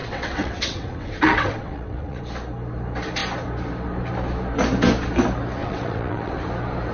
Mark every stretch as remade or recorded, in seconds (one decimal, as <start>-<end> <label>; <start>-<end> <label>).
0.0-2.2 remade; 2.2-5.6 recorded; 5.6-6.4 remade; 6.4-6.9 recorded

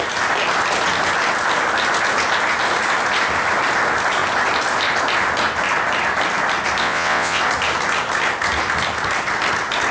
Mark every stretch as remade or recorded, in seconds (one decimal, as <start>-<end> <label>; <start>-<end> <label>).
0.0-6.8 recorded; 6.8-7.4 remade; 7.4-9.9 recorded

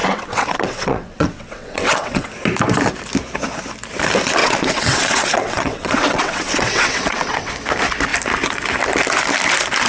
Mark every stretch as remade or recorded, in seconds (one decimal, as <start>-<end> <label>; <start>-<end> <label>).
0.0-2.3 remade; 2.3-4.4 recorded; 4.4-7.5 remade; 7.5-9.9 recorded

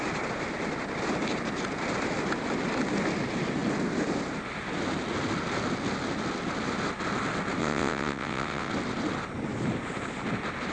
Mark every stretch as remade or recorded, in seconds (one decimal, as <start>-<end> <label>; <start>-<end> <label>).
0.0-7.6 recorded; 7.6-8.7 remade; 8.7-10.7 recorded

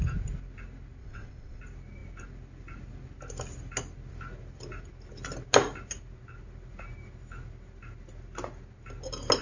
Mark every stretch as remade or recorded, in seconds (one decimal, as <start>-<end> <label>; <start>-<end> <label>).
0.0-1.0 recorded; 1.0-1.6 remade; 1.6-9.4 recorded